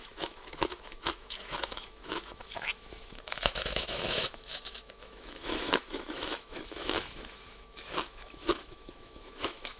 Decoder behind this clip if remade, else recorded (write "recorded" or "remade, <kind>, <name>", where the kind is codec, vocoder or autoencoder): remade, autoencoder, DAC-VAE